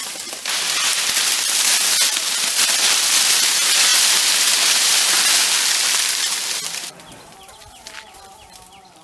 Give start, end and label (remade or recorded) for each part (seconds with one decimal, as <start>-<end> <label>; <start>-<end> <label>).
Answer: 0.0-9.0 recorded